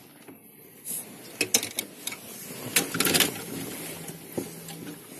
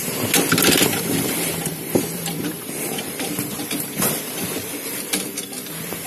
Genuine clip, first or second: first